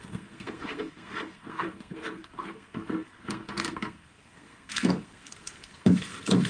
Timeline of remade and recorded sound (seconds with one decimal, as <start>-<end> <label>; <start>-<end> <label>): 0.0-6.5 remade